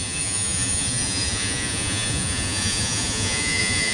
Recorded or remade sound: remade